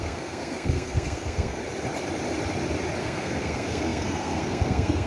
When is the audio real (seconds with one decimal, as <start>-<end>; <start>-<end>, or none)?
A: 1.6-3.0